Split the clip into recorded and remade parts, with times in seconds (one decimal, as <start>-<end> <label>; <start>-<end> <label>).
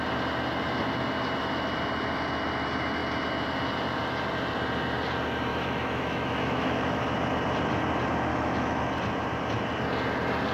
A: 0.0-5.5 recorded; 5.5-7.0 remade; 7.0-8.3 recorded; 8.3-8.8 remade; 8.8-10.5 recorded